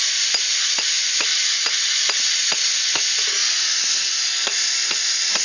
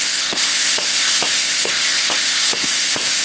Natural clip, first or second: first